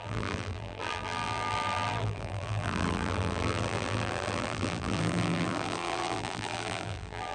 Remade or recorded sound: remade